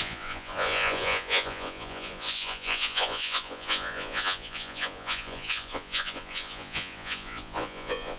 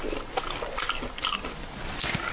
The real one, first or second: second